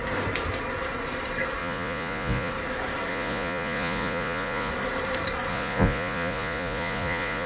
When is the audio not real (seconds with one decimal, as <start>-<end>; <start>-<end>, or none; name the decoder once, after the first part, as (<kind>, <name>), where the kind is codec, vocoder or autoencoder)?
1.6-2.5 (vocoder, Vocos); 3.1-4.7; 5.5-7.5